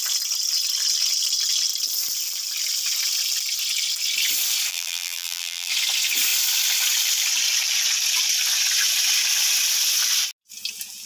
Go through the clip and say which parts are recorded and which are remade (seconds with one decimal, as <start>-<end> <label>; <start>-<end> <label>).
0.0-4.7 recorded; 4.7-5.7 remade; 5.7-11.1 recorded